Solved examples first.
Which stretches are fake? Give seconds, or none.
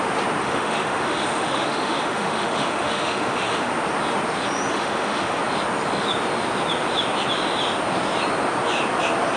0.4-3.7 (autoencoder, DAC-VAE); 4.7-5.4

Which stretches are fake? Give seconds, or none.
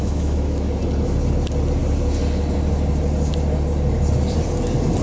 0.0-0.8 (autoencoder, DAC-VAE)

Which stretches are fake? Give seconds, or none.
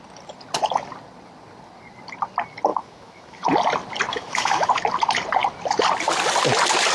2.7-3.5 (autoencoder, DAC-VAE); 4.1-4.7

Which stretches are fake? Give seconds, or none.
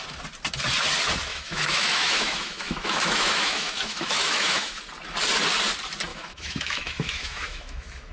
1.3-4.8 (autoencoder, DAC-VAE); 6.1-8.1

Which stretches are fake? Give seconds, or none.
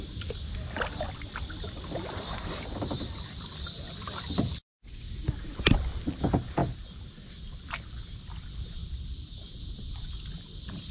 none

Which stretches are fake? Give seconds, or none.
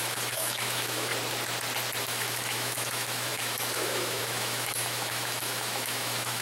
0.0-1.1 (autoencoder, DAC-VAE); 2.0-6.4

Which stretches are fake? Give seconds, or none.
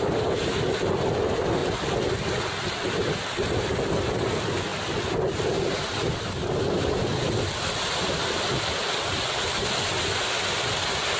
none